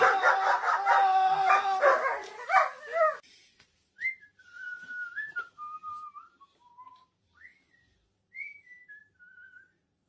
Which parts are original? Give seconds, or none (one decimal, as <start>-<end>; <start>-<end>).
0.0-10.1